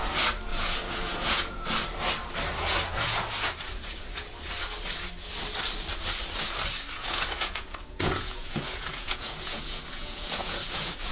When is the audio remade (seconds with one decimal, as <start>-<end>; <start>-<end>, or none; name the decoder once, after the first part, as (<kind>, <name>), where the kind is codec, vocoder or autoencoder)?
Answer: 0.5-1.7 (vocoder, Vocos); 2.7-4.3; 7.0-11.1